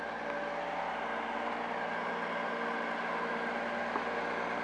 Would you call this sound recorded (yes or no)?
yes